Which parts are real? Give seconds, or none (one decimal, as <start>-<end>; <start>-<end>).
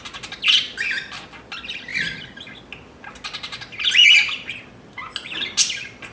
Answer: 0.0-6.1